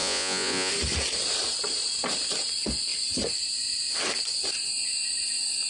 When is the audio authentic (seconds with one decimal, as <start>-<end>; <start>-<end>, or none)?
0.7-5.7